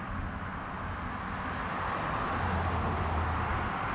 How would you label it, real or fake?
real